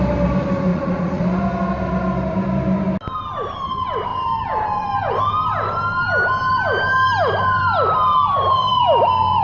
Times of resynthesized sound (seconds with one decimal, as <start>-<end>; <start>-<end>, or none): 0.7-1.2